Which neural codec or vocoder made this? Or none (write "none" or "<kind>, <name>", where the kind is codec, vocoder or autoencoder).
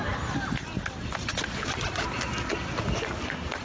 none